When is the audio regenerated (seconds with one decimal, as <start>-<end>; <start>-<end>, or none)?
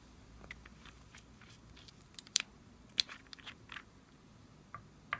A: 0.7-2.6